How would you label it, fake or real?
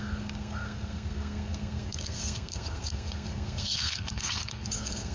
fake